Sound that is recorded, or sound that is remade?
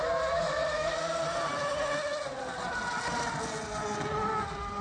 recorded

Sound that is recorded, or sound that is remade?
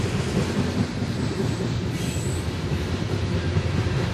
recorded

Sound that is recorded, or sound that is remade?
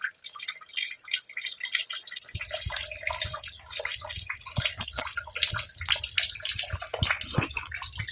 recorded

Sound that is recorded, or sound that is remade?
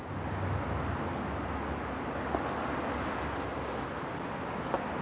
recorded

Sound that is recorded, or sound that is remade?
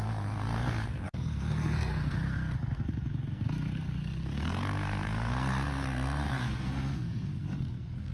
remade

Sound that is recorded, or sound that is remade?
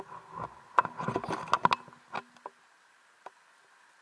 recorded